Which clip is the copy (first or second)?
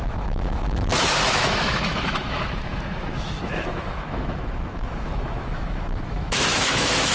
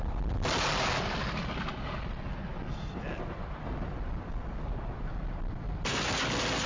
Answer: first